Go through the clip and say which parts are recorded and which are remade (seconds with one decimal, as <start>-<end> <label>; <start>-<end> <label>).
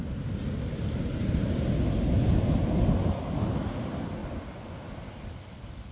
0.0-1.4 recorded; 1.4-2.7 remade; 2.7-5.9 recorded